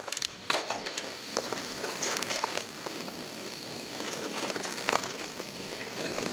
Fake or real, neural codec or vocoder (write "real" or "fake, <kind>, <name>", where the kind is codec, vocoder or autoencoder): fake, codec, DAC